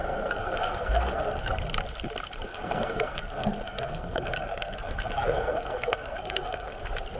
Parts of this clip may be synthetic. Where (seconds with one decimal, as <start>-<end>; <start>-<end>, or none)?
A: 0.0-1.5; 2.5-6.8